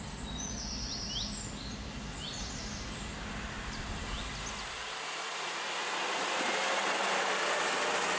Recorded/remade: recorded